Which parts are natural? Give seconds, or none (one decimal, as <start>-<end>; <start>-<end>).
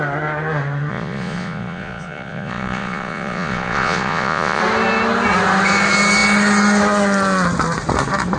0.0-0.9; 4.6-8.4